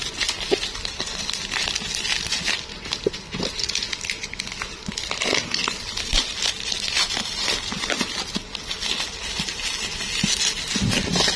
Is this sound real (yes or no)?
yes